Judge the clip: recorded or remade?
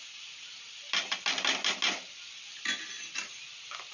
recorded